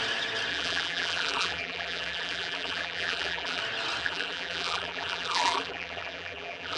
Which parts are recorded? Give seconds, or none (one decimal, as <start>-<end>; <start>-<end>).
0.0-0.5; 3.6-4.0